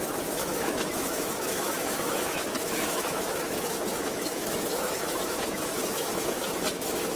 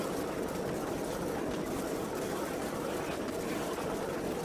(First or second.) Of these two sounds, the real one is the second